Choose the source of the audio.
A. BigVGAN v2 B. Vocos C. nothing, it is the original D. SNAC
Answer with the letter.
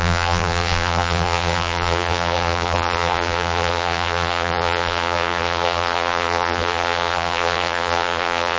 A